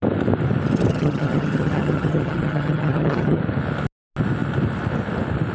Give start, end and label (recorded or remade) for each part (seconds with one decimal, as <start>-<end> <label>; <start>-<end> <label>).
0.0-0.9 recorded; 0.9-3.4 remade; 3.4-5.5 recorded